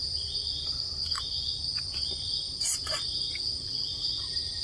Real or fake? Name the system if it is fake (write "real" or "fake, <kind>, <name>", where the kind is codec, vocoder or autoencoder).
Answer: fake, vocoder, BigVGAN v2